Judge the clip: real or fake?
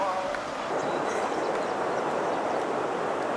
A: real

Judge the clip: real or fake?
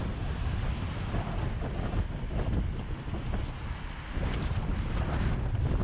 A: real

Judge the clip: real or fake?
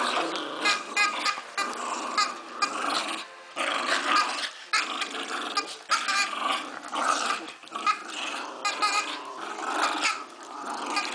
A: real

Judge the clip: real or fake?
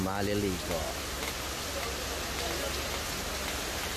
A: real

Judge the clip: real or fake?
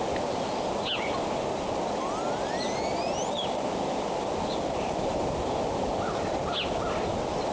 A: real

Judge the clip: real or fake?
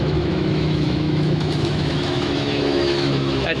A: fake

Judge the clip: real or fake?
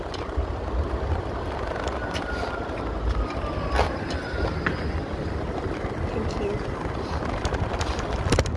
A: real